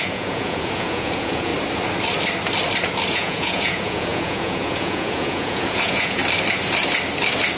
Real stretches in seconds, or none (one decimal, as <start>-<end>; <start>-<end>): 1.5-3.1; 6.2-7.6